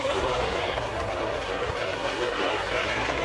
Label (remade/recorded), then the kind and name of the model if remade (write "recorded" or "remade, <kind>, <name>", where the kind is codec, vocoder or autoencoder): remade, codec, SNAC